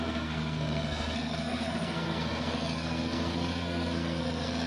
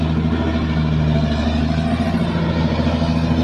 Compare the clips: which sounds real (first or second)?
second